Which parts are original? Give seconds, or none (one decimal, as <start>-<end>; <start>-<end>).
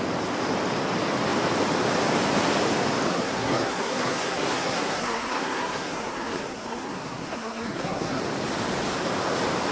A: 0.0-3.1; 8.2-9.7